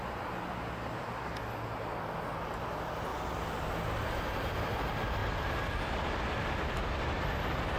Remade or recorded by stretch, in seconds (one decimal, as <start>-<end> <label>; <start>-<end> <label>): 0.0-7.8 recorded